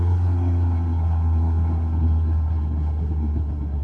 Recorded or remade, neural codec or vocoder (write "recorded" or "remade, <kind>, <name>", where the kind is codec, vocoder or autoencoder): remade, codec, SNAC